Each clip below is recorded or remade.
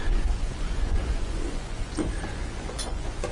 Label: remade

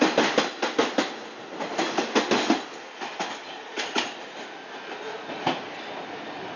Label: recorded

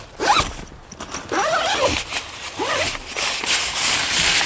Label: recorded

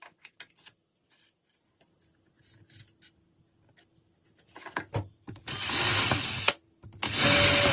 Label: recorded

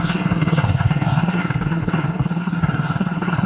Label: remade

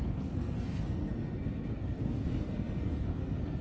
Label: remade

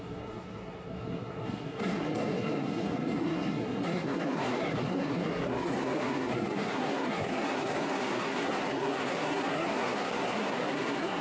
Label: remade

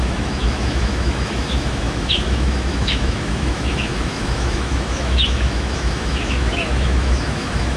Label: remade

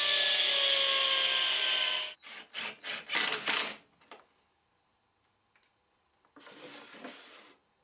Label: recorded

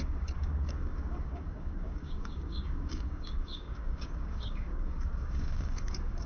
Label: remade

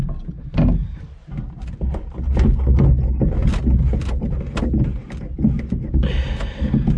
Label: recorded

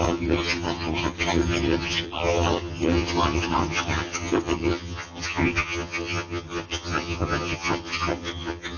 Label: remade